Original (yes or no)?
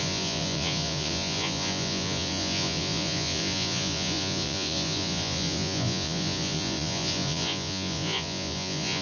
no